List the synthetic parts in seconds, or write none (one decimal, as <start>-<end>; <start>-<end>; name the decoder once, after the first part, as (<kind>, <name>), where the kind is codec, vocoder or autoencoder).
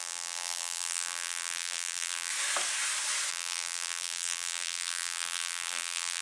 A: 0.0-2.3 (vocoder, BigVGAN v2); 3.3-6.2